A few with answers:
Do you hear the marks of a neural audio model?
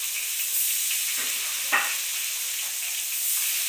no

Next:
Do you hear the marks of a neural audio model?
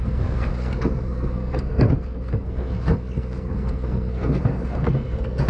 yes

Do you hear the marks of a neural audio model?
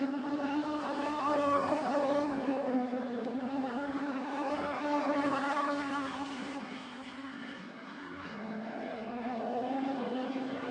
yes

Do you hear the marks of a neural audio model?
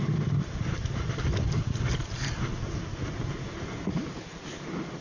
no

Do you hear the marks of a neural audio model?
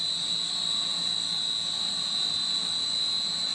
no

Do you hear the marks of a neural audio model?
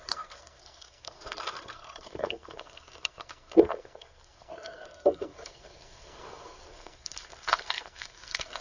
yes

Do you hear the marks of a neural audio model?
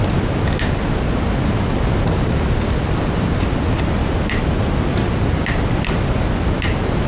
no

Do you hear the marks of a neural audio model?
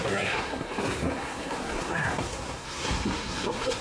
yes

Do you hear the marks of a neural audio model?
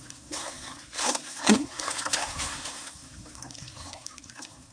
yes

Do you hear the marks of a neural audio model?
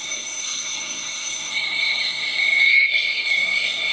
yes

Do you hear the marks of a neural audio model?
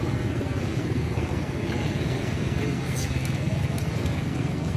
yes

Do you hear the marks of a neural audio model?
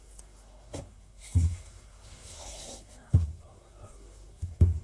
yes